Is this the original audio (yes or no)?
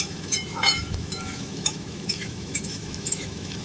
no